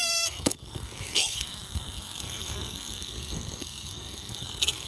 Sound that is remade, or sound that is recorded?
remade